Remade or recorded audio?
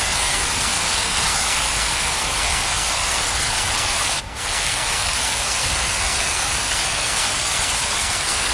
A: remade